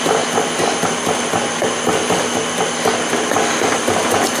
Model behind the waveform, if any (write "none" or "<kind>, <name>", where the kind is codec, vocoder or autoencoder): none